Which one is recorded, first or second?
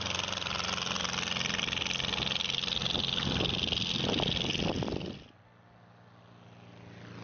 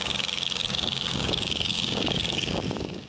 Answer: first